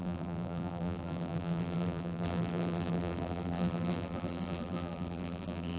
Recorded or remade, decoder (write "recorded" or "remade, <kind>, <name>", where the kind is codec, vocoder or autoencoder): remade, vocoder, BigVGAN v2